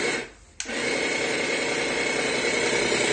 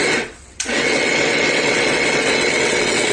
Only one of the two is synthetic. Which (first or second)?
second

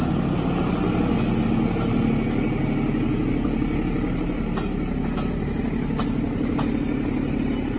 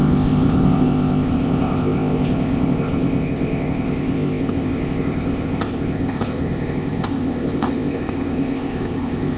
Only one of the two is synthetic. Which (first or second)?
second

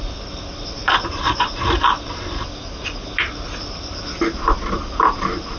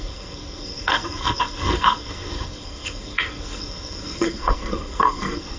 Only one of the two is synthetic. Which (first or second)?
second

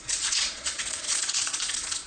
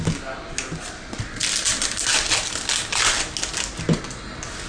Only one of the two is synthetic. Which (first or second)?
first